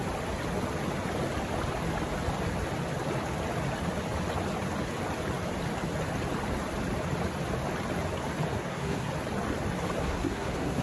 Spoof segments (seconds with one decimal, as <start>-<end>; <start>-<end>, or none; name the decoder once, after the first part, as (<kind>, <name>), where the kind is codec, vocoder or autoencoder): 8.5-9.1 (codec, SNAC); 10.0-10.8